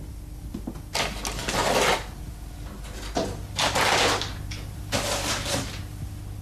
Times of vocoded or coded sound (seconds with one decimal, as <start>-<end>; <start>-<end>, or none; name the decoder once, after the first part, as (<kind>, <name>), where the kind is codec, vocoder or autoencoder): none